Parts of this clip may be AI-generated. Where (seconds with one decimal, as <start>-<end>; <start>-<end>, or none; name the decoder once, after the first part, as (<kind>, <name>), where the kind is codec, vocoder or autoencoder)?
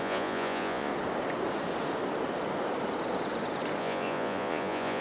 0.0-0.9 (vocoder, Vocos); 3.8-5.0